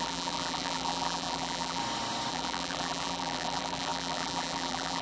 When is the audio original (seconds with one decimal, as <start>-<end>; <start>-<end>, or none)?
1.8-2.3